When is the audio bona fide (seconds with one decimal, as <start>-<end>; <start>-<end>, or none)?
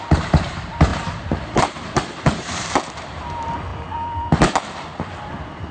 3.7-5.7